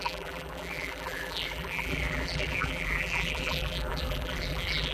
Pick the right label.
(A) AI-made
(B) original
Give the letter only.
A